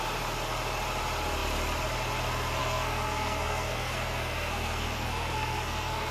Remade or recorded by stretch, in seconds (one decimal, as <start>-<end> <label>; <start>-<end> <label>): 0.0-2.6 recorded; 2.6-6.1 remade